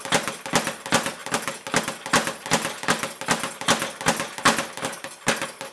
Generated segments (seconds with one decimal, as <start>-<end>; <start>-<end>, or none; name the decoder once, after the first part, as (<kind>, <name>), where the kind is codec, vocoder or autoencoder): none